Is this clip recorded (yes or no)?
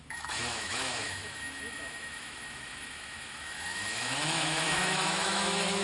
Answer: no